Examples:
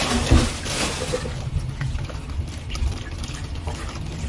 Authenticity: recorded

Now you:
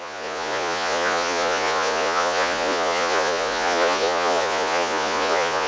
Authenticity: remade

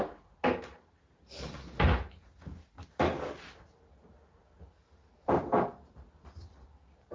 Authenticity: recorded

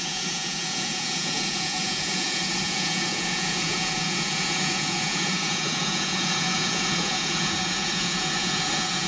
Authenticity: remade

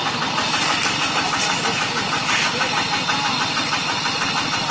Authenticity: recorded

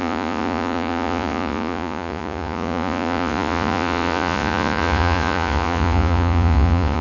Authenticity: remade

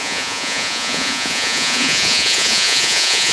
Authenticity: remade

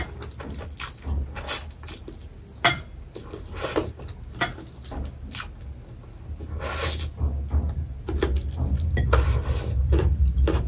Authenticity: recorded